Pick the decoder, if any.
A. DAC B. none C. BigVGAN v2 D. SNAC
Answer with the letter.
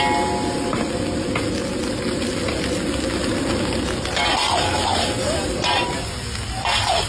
B